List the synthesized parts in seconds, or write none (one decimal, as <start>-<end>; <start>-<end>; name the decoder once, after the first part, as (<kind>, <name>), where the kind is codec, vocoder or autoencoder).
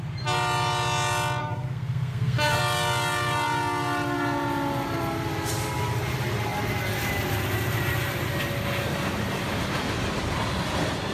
1.4-2.6 (codec, SNAC)